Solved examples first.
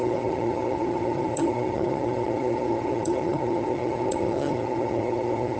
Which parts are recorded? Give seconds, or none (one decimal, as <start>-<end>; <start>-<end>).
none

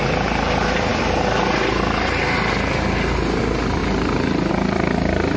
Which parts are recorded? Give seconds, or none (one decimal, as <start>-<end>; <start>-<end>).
0.0-5.4

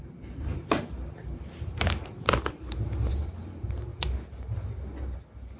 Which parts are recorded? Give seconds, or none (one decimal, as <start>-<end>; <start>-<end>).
3.9-5.6

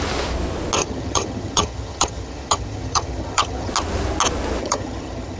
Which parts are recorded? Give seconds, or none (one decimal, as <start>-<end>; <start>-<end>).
0.0-0.8; 3.7-4.6

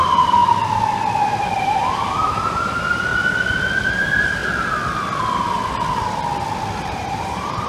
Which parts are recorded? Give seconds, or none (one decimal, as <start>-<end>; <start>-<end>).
0.4-1.6; 3.1-3.9; 4.4-6.8

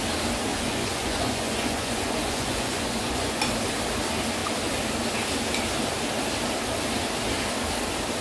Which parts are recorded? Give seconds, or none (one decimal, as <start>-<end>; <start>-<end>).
0.0-0.5; 3.4-8.2